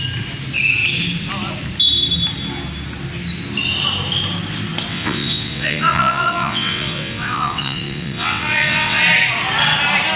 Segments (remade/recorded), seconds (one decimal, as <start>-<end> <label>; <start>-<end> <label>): 0.0-4.9 recorded; 4.9-9.0 remade; 9.0-10.2 recorded